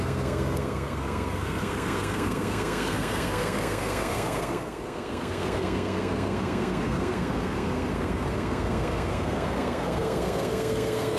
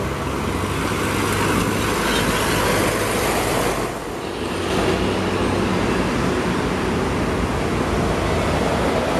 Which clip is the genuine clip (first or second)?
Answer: second